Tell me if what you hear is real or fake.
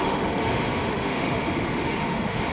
fake